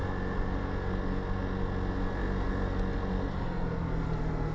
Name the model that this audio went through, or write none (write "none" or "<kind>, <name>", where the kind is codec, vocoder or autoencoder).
none